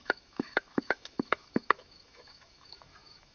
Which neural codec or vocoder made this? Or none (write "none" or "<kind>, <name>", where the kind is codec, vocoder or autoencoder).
autoencoder, DAC-VAE